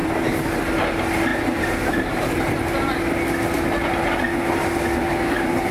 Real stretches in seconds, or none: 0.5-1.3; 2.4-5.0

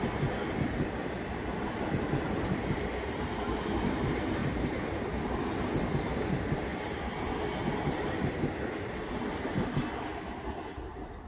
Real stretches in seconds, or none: 0.0-4.4; 5.2-11.3

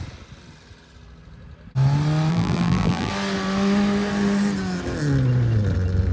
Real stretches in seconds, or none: 0.0-2.3; 3.1-6.1

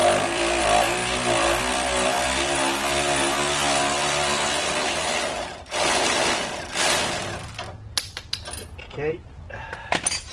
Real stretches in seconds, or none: 0.6-10.3

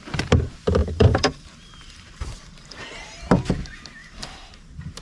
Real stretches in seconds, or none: 0.0-0.8; 3.2-4.0; 4.5-5.0

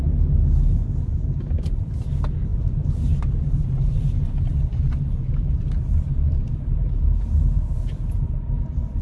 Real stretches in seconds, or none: 0.0-1.5